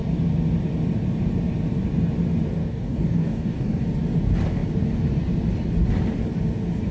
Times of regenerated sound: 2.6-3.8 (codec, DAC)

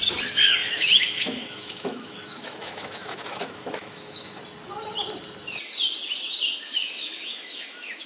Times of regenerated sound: 0.6-4.4 (autoencoder, DAC-VAE); 6.5-8.1

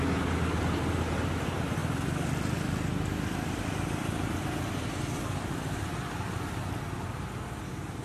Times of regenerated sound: 1.8-6.6 (vocoder, BigVGAN v2)

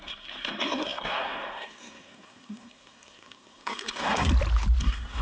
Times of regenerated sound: 0.0-4.3 (codec, SNAC); 4.8-5.2

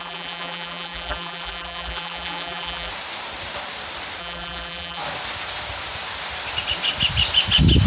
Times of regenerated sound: 0.0-2.9 (vocoder, BigVGAN v2); 4.2-5.0

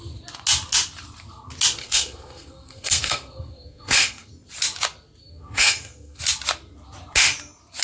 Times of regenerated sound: 1.8-4.3 (codec, SNAC); 5.2-6.2